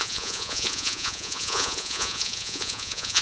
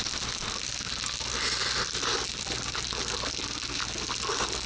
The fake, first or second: first